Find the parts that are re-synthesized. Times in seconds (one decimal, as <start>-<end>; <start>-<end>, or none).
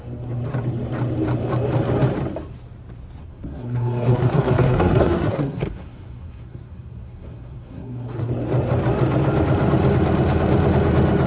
3.2-8.3